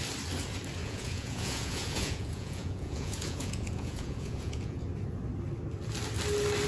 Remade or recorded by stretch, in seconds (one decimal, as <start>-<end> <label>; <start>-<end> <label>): 0.0-0.8 recorded; 0.8-4.8 remade; 4.8-6.7 recorded